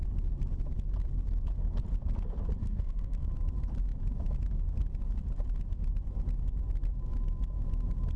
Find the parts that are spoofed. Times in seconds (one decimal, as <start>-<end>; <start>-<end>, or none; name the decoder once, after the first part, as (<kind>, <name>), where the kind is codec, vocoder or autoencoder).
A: 2.6-3.3 (codec, SNAC)

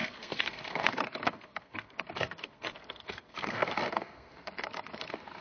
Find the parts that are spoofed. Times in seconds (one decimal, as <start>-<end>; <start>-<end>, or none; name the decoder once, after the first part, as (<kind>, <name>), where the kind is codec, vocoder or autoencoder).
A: 0.0-5.4 (codec, SNAC)

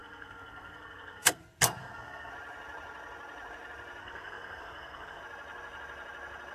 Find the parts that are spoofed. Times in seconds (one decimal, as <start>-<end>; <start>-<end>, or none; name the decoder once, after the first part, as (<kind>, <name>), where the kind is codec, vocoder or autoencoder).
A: 0.0-1.4 (codec, SNAC); 1.8-2.3; 4.0-5.2

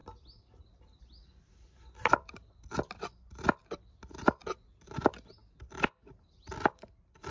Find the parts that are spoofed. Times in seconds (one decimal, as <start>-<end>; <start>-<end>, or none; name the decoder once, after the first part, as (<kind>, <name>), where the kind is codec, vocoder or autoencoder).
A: none

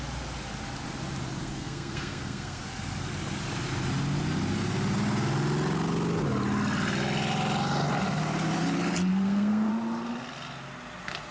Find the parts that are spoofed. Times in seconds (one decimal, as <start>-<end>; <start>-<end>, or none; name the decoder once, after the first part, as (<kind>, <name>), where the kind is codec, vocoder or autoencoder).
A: 1.4-2.6 (codec, SNAC); 9.1-9.7

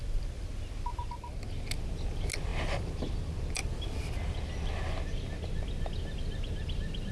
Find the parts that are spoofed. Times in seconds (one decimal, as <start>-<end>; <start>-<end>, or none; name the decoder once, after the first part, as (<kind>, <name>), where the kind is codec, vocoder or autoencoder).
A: none

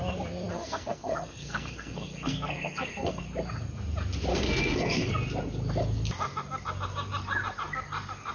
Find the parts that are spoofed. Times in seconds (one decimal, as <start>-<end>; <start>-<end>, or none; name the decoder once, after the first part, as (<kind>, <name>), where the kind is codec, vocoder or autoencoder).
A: 0.5-3.2 (codec, SNAC); 4.3-5.1